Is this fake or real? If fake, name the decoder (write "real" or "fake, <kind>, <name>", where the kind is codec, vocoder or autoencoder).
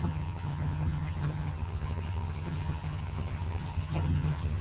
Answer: fake, vocoder, HiFi-GAN